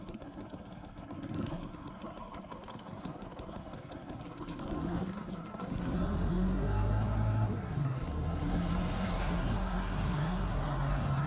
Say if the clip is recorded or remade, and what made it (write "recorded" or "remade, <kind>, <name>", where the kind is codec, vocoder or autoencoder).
remade, codec, SNAC